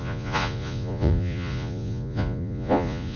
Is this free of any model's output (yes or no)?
no